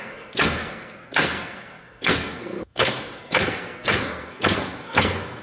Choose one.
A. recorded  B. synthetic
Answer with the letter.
B